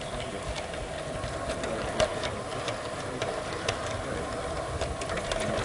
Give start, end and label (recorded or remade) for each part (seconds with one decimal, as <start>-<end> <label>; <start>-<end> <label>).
0.0-5.6 recorded